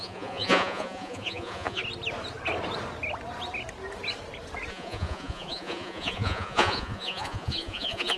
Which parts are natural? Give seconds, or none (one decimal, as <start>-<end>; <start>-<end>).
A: 1.8-4.7